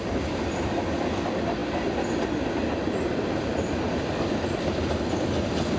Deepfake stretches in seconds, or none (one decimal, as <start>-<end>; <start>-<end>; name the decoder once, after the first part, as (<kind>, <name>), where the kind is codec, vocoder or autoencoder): none